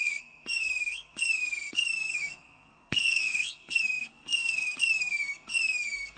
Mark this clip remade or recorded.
remade